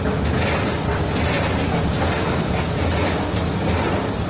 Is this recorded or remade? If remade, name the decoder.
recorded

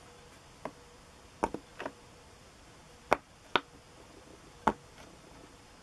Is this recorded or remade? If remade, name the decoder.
recorded